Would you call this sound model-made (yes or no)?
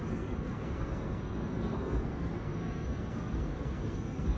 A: yes